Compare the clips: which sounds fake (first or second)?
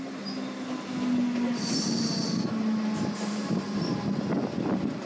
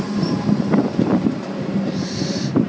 second